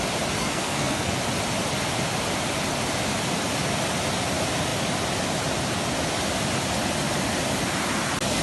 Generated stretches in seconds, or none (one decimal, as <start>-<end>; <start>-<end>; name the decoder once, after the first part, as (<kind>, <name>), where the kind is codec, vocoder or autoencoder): 0.4-1.2 (codec, SNAC)